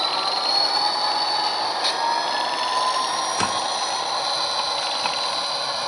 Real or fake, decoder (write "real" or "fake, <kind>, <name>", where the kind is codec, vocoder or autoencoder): real